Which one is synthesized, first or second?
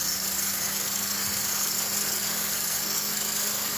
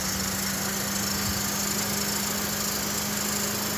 first